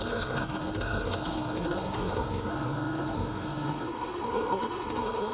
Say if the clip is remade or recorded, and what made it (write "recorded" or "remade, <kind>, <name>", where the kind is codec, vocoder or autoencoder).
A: remade, codec, SNAC